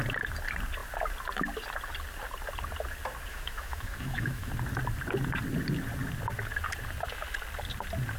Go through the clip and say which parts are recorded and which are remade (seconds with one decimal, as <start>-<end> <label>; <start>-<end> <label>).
0.0-3.3 recorded; 3.3-4.5 remade; 4.5-8.2 recorded